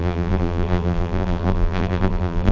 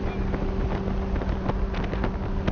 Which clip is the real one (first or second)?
second